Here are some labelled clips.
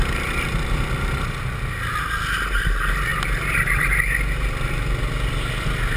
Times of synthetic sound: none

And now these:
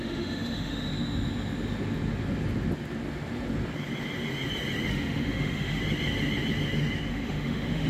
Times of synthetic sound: 0.0-0.9 (autoencoder, DAC-VAE); 4.9-5.8; 7.1-7.9

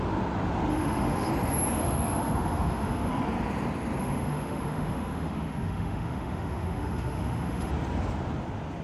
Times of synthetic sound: 0.7-1.3 (autoencoder, DAC-VAE); 1.8-3.1; 4.0-7.7